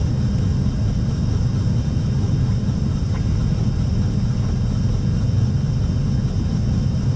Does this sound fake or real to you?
real